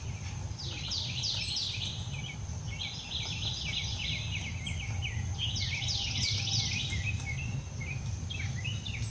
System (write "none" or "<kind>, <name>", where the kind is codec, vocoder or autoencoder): none